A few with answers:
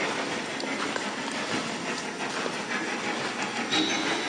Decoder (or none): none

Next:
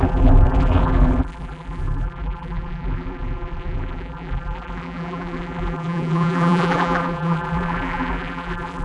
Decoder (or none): vocoder, BigVGAN v2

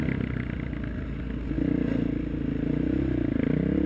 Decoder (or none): none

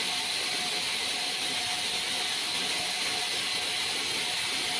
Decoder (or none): none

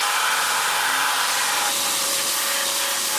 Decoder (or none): vocoder, BigVGAN v2